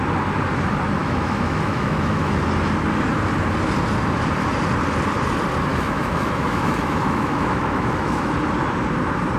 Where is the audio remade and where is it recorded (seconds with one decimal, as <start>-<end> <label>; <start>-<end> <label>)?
0.0-1.0 recorded; 1.0-2.4 remade; 2.4-5.7 recorded; 5.7-8.3 remade; 8.3-9.4 recorded